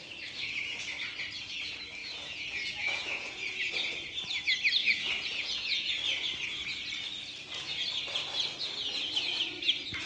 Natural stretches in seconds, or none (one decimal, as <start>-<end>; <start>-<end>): 0.0-2.0; 3.7-4.8; 5.9-10.1

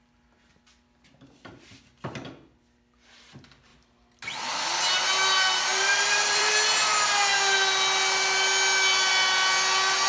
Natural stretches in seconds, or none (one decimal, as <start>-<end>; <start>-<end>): 0.0-5.7; 6.5-10.1

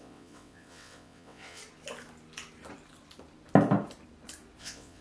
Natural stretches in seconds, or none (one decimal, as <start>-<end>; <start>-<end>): 1.6-4.6

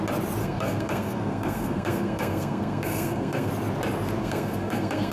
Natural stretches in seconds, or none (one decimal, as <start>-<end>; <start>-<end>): 0.0-0.4; 3.5-4.2

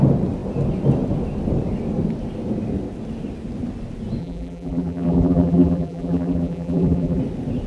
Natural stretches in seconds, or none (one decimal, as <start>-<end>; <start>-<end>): 0.0-4.2; 7.2-7.7